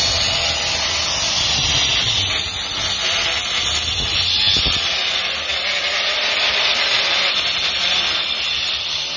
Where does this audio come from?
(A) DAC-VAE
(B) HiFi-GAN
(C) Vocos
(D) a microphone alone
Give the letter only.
D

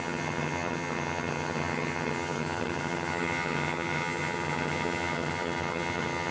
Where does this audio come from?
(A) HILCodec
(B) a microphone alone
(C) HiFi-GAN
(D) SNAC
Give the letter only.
C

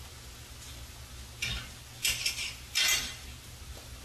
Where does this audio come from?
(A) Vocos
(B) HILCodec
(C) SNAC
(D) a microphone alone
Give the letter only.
D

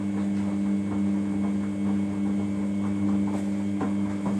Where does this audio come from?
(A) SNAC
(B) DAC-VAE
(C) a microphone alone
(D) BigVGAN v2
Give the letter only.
C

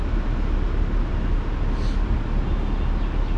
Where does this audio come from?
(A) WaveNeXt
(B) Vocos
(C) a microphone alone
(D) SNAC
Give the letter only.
C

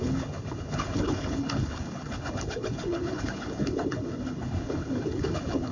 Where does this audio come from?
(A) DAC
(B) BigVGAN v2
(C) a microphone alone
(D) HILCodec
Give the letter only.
D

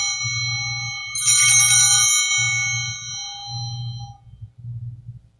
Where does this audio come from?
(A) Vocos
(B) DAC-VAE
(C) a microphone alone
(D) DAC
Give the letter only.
C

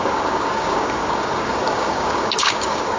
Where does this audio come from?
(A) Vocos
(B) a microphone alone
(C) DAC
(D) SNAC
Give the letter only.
C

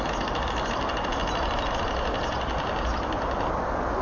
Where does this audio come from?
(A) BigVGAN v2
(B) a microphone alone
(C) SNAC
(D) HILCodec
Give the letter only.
B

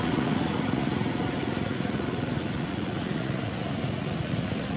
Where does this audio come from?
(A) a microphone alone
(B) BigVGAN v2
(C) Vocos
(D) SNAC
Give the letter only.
C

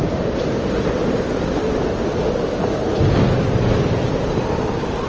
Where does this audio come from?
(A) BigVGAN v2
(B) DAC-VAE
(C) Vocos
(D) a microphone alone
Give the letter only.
D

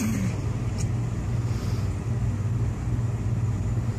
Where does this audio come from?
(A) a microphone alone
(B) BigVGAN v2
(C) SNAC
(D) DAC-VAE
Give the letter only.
A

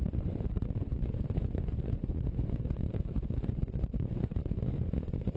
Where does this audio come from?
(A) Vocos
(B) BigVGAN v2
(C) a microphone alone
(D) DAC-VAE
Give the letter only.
A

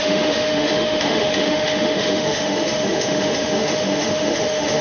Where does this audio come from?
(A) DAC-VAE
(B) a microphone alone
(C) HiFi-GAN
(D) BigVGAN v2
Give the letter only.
A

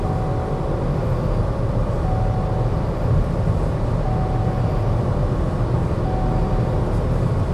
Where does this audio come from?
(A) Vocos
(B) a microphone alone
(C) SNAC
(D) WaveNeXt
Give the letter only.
B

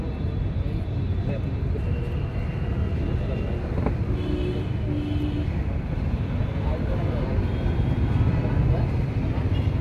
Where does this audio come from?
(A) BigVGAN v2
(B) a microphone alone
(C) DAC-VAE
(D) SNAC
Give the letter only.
B